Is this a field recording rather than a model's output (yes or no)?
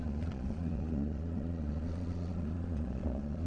no